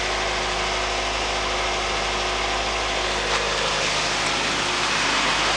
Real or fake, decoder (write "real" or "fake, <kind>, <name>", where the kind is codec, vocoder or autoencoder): real